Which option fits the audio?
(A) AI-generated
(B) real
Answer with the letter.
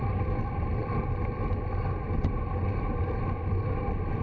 B